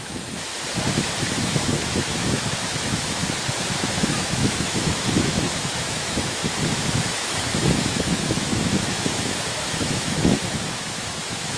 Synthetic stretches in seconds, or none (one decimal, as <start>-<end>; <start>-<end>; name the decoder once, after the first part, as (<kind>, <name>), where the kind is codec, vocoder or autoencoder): 0.0-0.5 (autoencoder, DAC-VAE); 1.3-3.2; 3.8-6.4; 6.9-11.6